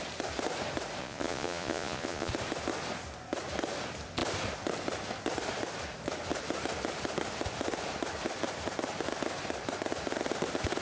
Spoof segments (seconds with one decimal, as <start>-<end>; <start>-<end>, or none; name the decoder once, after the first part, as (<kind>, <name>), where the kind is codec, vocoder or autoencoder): 1.0-2.3 (vocoder, Vocos)